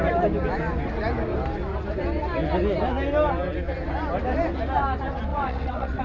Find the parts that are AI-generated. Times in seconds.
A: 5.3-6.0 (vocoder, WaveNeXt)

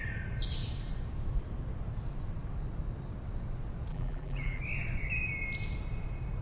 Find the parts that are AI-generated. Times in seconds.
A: 3.9-4.6 (vocoder, BigVGAN v2)

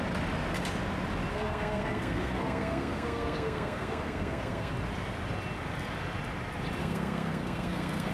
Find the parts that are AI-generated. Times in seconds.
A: 1.3-4.7 (codec, SNAC); 6.8-8.1

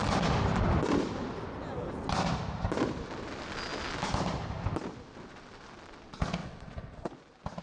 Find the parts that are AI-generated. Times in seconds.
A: 6.4-7.1 (vocoder, WaveNeXt)

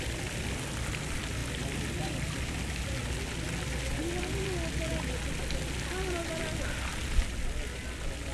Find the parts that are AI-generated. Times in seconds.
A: none